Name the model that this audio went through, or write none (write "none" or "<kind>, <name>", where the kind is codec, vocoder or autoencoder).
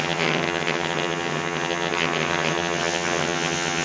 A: vocoder, HiFi-GAN